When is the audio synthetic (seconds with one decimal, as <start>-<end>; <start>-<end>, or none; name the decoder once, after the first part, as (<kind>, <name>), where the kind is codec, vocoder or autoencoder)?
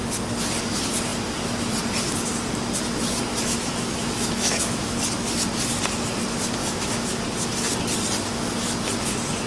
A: 3.3-5.0 (autoencoder, DAC-VAE); 6.6-7.2